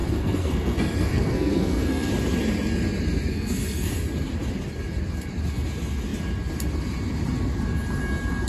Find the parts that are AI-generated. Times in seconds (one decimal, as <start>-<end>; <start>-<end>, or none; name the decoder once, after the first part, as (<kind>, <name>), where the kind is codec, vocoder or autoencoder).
0.0-2.1 (codec, SNAC); 3.3-3.9